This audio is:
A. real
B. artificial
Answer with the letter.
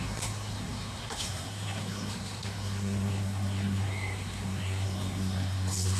B